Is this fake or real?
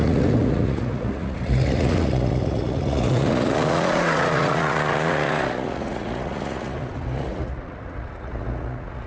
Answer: fake